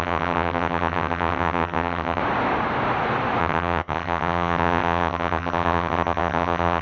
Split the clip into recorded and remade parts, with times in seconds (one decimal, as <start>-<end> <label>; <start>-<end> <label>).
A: 0.0-2.2 remade; 2.2-3.4 recorded; 3.4-6.8 remade